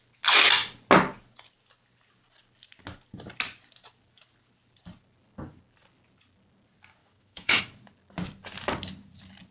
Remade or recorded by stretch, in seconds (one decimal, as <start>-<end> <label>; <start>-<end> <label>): 0.0-7.0 recorded; 7.0-7.6 remade; 7.6-9.5 recorded